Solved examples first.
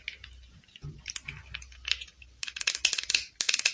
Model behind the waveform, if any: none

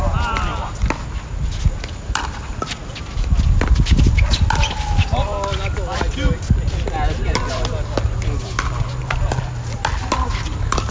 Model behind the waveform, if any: none